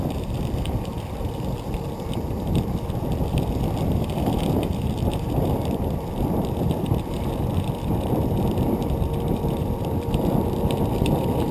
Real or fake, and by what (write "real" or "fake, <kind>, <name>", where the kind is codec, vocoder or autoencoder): fake, vocoder, BigVGAN v2